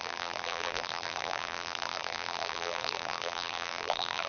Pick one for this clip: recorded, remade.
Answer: remade